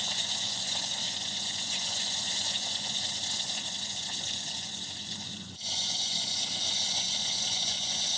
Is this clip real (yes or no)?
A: no